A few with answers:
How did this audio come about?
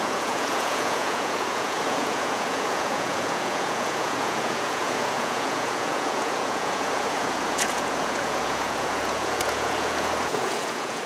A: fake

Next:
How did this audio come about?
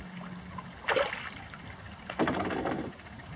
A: real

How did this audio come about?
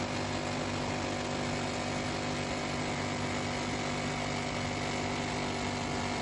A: real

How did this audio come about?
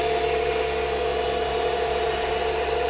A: real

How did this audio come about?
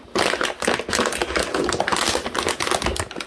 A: real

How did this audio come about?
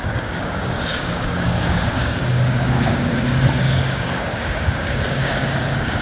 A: fake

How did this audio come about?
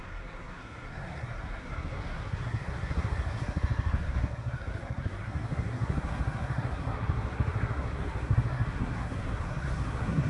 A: fake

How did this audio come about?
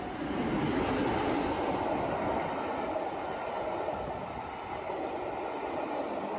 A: real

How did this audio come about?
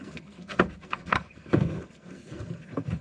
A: fake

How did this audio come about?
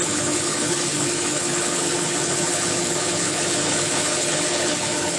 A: fake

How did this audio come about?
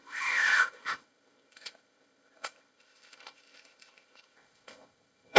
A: fake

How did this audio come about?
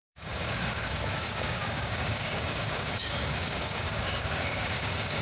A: fake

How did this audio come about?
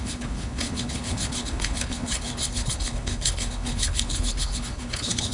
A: fake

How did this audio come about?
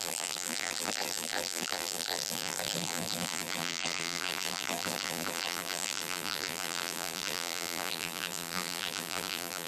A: fake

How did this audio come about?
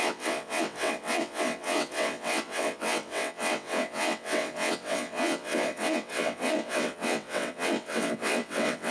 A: fake